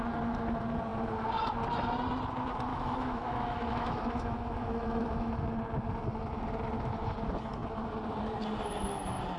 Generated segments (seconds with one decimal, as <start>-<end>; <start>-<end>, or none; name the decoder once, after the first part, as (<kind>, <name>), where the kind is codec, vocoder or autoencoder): 2.7-5.3 (autoencoder, DAC-VAE)